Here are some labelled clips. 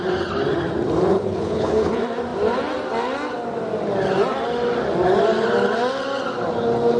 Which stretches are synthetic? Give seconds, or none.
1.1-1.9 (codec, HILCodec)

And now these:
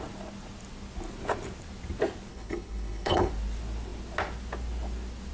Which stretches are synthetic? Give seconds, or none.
2.3-3.3 (codec, HILCodec)